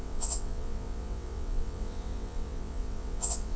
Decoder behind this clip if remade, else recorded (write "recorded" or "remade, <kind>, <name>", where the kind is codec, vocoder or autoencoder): remade, vocoder, WaveNeXt